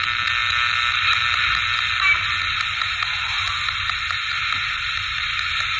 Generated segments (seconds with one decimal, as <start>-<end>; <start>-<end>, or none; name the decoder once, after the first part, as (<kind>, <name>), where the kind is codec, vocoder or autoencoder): none